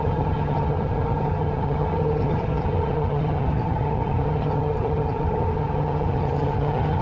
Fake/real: fake